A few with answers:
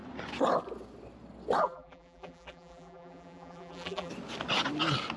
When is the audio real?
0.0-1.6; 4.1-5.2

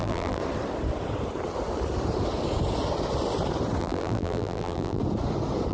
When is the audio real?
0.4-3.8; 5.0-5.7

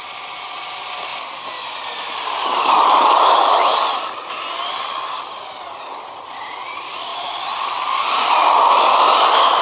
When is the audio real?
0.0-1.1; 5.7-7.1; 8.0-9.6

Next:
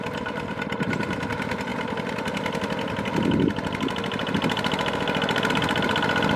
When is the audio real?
0.0-6.4

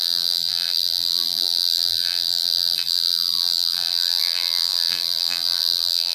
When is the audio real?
none